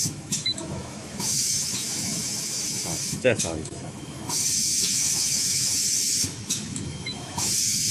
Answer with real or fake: fake